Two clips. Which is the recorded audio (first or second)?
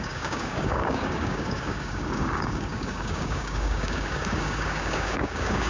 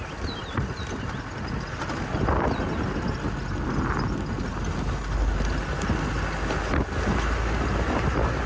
second